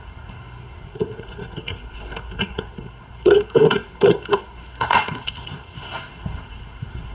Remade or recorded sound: remade